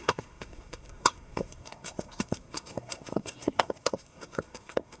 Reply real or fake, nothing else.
fake